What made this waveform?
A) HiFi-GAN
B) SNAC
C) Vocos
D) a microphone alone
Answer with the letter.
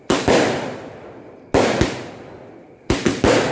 D